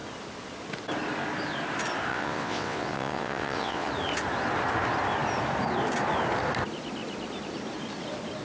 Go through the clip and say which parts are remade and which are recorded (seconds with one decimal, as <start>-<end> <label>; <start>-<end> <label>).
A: 0.0-2.1 recorded; 2.1-3.9 remade; 3.9-8.4 recorded